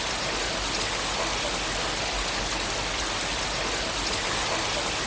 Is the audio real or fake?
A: real